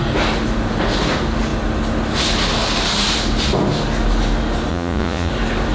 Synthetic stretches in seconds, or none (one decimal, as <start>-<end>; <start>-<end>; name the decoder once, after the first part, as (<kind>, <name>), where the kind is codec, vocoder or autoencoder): 4.7-5.3 (vocoder, Vocos)

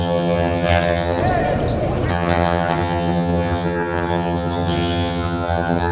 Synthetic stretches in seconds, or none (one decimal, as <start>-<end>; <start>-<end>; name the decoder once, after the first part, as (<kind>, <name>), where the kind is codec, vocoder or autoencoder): 0.0-1.2 (vocoder, HiFi-GAN); 2.1-5.9

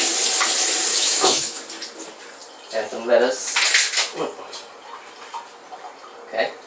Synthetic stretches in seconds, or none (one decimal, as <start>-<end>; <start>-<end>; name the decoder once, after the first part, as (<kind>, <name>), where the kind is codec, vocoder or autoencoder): 0.9-1.6 (autoencoder, DAC-VAE)

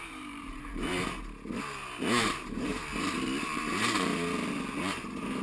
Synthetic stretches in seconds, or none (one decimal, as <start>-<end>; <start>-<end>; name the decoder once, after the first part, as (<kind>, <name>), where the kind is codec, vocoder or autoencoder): 0.0-0.9 (vocoder, BigVGAN v2); 1.6-2.7; 3.4-4.1; 4.9-5.4

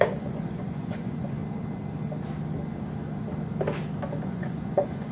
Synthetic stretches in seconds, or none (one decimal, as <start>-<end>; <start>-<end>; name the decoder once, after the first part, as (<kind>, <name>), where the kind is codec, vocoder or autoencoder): 0.0-1.4 (vocoder, Vocos); 4.2-5.1

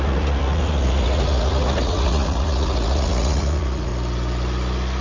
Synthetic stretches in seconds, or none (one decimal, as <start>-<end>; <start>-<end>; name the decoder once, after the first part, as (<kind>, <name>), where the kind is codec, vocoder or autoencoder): 0.0-3.9 (vocoder, Vocos)

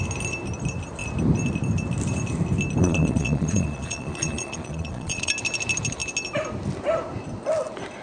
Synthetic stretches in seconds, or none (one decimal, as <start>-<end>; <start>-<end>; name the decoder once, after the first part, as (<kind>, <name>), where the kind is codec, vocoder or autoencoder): 2.8-5.3 (vocoder, Vocos)

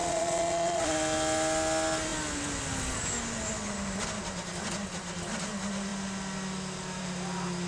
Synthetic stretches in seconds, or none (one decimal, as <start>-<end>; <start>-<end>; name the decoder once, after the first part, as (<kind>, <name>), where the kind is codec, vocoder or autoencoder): 0.0-0.8 (vocoder, Vocos)